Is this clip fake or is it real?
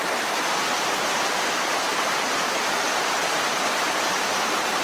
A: real